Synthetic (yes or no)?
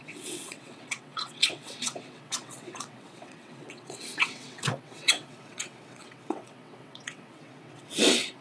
yes